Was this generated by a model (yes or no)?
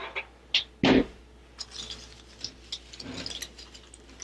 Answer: no